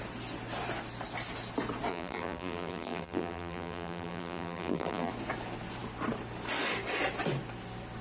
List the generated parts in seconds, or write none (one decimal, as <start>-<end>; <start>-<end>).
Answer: 1.9-5.1